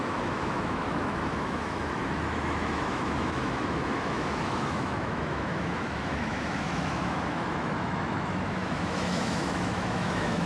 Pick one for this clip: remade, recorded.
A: remade